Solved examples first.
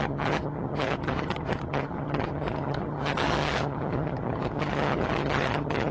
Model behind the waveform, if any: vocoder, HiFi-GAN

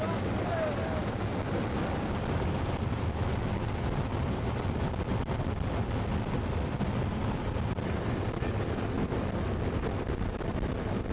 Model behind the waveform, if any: none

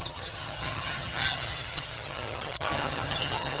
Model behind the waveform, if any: vocoder, HiFi-GAN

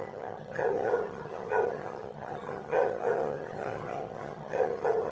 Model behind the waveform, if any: vocoder, HiFi-GAN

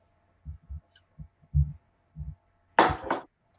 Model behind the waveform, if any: none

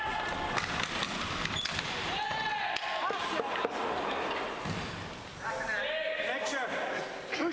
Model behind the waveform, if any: none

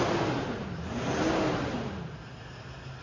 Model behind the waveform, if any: none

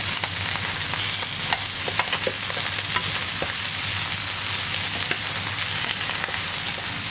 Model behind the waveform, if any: none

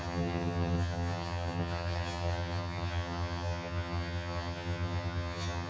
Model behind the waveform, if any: vocoder, HiFi-GAN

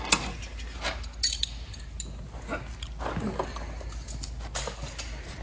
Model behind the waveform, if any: none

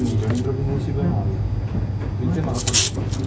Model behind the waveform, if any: none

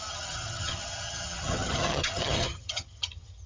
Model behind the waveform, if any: vocoder, HiFi-GAN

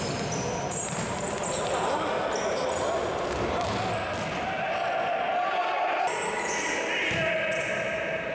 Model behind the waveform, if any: none